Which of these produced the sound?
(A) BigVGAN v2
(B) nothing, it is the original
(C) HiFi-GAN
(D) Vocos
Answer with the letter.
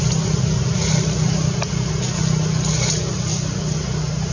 B